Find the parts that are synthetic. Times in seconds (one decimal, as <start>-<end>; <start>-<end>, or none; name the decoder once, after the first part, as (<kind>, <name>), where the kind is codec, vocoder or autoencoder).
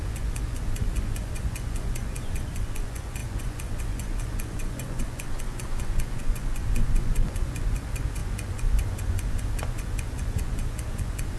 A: 0.0-11.4 (vocoder, Vocos)